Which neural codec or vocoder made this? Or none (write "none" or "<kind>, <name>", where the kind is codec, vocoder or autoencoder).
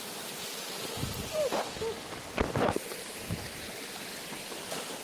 none